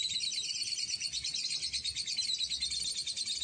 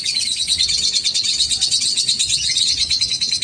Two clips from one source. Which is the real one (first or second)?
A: first